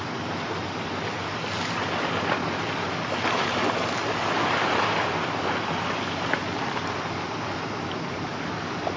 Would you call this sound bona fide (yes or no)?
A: yes